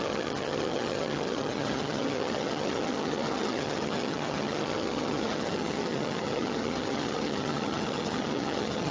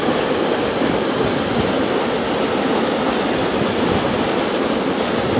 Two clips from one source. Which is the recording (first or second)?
second